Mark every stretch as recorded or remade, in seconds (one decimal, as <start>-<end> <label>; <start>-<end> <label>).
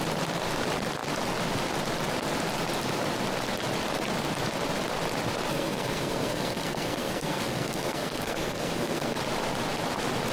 0.0-5.5 recorded; 5.5-9.2 remade; 9.2-10.3 recorded